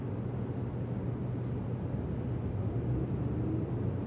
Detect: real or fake real